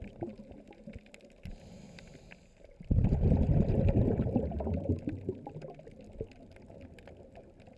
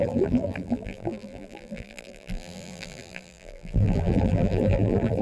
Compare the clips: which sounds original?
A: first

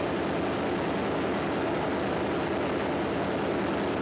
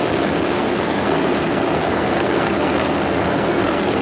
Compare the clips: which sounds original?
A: first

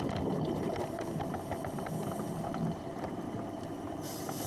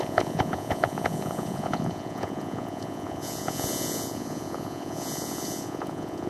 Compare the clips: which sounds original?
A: first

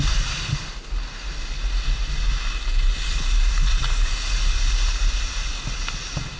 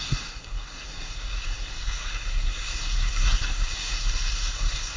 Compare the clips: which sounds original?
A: first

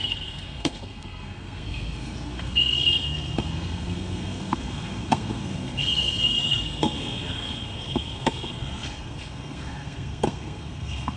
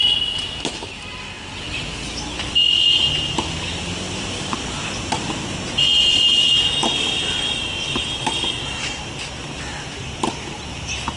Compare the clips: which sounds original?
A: second